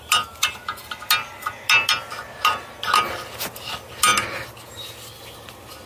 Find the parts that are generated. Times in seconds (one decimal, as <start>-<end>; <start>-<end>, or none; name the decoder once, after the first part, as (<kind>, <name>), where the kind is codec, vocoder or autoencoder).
none